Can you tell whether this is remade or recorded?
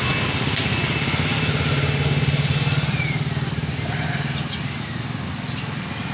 recorded